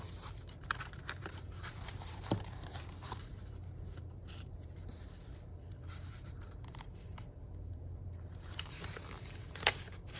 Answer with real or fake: fake